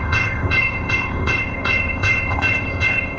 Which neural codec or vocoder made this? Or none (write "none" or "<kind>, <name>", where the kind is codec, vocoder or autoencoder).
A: codec, ZipCodec